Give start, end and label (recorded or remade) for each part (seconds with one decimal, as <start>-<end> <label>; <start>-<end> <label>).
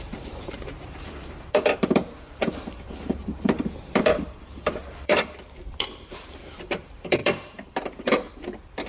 0.0-8.9 remade